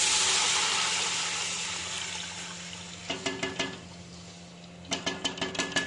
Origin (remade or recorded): recorded